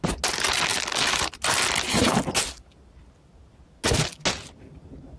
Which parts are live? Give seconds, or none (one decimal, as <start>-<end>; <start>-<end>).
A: 0.0-5.2